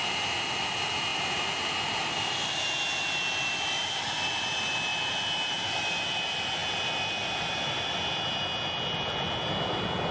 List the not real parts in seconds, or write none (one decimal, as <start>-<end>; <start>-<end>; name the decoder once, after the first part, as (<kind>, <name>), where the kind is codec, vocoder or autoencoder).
none